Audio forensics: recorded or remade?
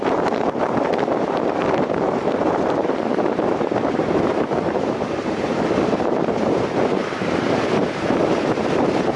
remade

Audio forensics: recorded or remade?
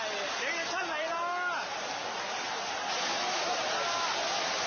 recorded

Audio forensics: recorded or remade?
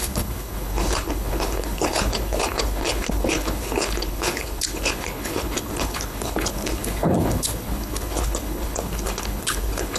remade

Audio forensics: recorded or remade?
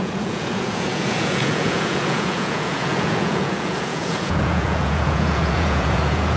remade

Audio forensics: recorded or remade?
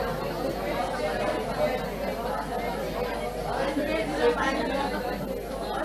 recorded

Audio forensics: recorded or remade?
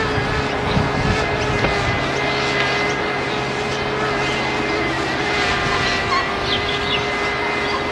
recorded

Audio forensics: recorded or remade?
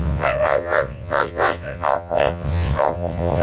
remade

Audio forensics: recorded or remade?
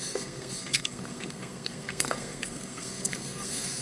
remade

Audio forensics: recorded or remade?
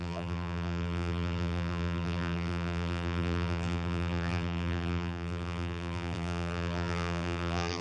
remade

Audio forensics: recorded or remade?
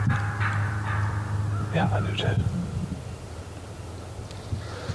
recorded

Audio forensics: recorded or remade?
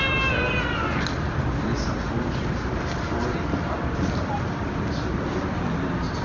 recorded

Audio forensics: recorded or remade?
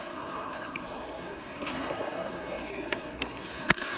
remade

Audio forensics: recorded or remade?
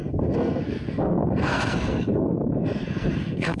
remade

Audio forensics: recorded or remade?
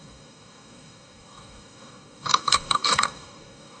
remade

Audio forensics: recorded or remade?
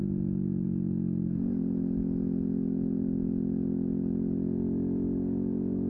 recorded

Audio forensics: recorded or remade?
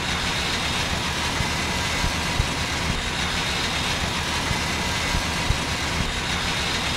recorded